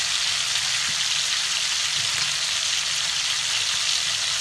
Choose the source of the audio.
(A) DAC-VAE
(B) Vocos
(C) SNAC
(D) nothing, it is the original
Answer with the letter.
D